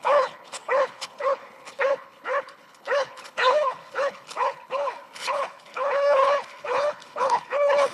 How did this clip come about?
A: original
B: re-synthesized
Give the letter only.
B